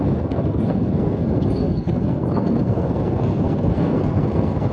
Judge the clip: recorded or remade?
remade